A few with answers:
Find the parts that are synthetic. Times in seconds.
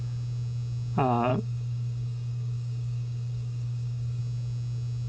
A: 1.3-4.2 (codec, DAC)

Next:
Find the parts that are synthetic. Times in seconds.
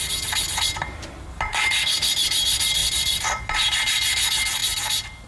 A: 2.8-3.4 (vocoder, BigVGAN v2)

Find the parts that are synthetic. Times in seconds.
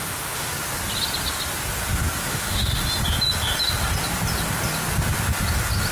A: 0.0-0.5 (autoencoder, DAC-VAE); 2.3-2.8